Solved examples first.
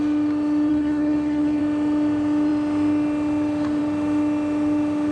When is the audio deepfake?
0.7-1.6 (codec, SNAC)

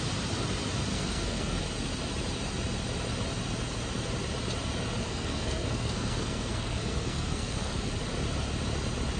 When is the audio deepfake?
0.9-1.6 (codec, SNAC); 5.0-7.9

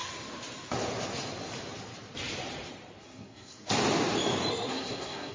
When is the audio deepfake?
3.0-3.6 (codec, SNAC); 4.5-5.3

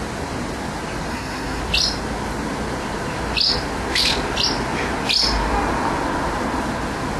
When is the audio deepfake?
1.1-1.6 (codec, SNAC)